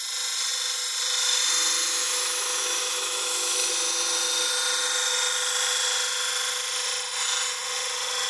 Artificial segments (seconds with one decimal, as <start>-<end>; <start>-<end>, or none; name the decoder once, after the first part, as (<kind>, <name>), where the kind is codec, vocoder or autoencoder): 1.9-3.7 (autoencoder, DAC-VAE)